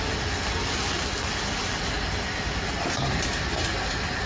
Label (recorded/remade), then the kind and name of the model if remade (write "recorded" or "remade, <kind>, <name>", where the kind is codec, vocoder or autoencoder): recorded